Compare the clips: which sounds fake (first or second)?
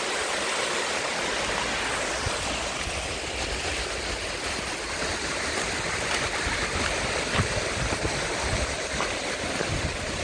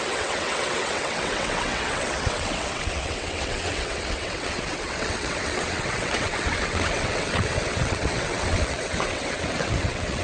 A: second